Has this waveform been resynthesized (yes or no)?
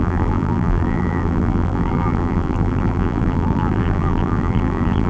yes